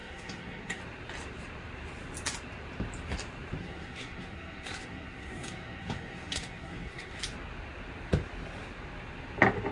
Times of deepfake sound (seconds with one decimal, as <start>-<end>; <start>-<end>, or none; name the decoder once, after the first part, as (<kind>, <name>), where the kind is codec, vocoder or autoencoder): 0.0-0.8 (codec, SNAC); 3.6-7.2

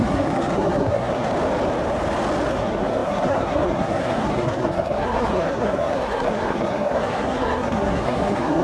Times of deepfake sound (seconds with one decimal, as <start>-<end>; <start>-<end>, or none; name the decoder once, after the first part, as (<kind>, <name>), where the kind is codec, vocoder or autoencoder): 0.0-1.3 (codec, SNAC); 2.5-8.6

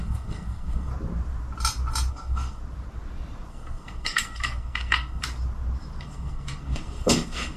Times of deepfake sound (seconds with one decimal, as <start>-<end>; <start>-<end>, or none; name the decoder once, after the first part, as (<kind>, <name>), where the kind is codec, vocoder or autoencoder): 0.0-0.9 (codec, SNAC); 2.1-2.6; 3.5-5.2; 6.0-7.6

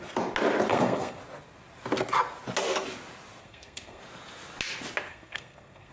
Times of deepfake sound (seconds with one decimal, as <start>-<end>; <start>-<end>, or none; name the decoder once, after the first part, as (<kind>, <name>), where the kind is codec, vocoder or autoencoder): 0.7-1.2 (codec, SNAC); 3.4-4.0; 5.1-5.9

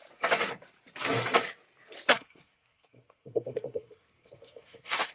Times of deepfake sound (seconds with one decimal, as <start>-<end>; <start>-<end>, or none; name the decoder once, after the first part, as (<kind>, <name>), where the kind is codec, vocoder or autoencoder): 2.1-5.1 (codec, SNAC)

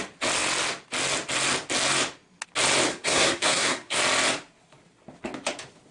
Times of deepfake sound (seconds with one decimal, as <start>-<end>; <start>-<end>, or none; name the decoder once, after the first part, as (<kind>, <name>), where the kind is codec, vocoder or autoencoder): 2.9-4.0 (codec, SNAC)